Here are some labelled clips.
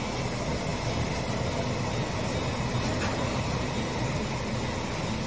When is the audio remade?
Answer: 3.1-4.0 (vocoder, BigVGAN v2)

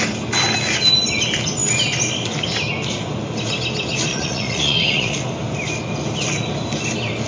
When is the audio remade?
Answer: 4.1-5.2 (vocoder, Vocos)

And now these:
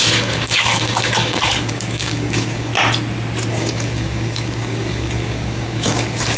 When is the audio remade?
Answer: 0.0-2.7 (codec, DAC); 3.5-6.4